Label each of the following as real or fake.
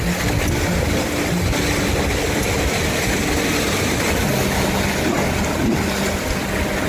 real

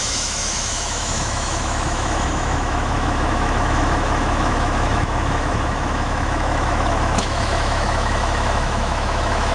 fake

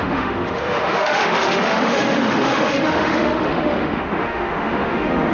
fake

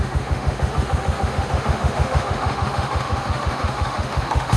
fake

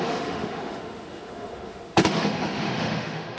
fake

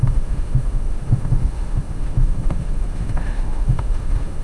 fake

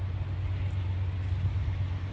real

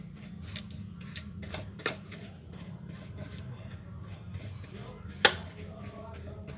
real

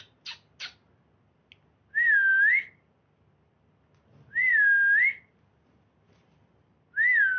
real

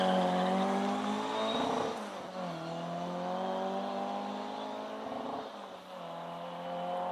real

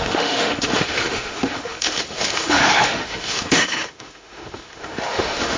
fake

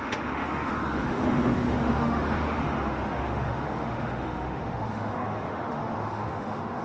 fake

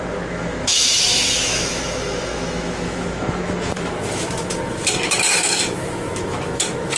fake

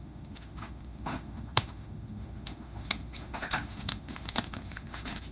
fake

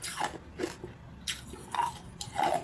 real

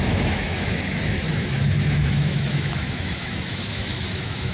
fake